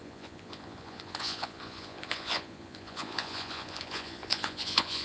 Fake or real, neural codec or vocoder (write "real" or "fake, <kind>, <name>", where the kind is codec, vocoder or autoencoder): fake, vocoder, Vocos